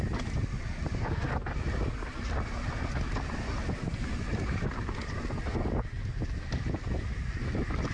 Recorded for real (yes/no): yes